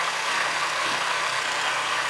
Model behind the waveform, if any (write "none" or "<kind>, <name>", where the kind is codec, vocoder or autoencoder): codec, SNAC